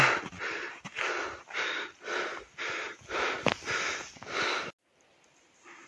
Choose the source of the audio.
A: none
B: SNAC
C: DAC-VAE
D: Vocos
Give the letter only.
A